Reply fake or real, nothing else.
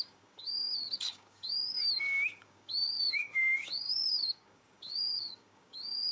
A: fake